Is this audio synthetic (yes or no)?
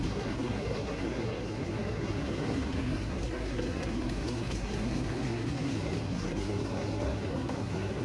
yes